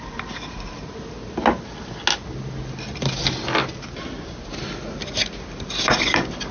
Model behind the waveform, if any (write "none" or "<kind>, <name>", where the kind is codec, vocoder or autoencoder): none